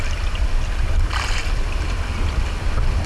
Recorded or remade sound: recorded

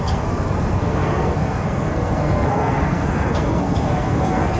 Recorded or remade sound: remade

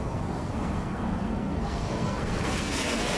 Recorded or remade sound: remade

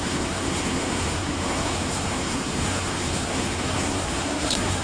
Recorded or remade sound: remade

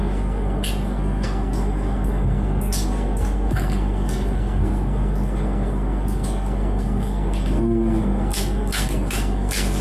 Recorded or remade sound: remade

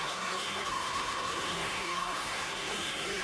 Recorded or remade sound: remade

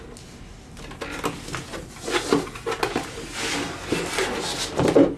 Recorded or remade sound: recorded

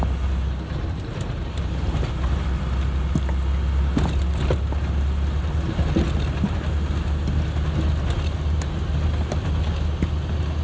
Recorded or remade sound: recorded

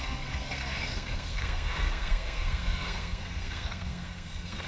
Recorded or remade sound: remade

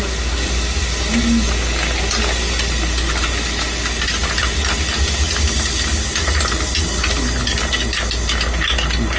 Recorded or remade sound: recorded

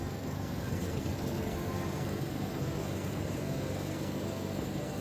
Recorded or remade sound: remade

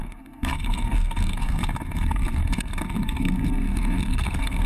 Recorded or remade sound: remade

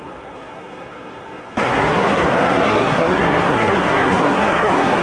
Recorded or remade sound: remade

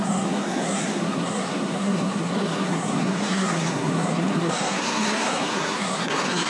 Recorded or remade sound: remade